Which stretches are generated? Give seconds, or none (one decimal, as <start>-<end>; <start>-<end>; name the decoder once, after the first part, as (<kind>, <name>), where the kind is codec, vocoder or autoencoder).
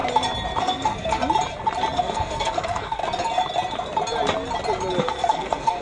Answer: 0.6-1.2 (codec, SNAC); 2.0-3.0; 5.0-5.8